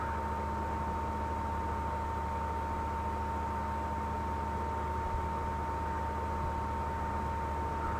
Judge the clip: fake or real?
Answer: real